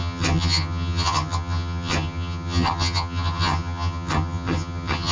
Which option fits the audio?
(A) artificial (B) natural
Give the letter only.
A